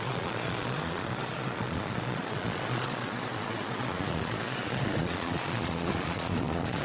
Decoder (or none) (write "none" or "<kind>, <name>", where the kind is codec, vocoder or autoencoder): vocoder, Vocos